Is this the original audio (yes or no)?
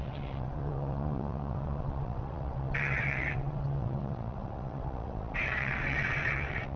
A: no